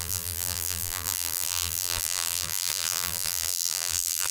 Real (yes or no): no